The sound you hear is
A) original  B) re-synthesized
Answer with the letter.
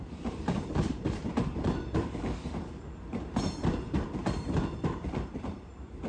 B